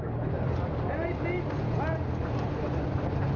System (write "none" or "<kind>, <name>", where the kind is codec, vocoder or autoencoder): none